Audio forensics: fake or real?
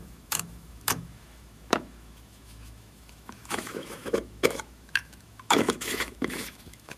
fake